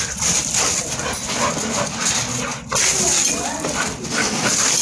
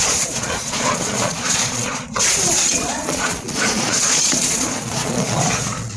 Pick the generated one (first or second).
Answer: second